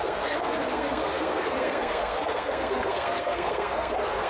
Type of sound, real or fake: fake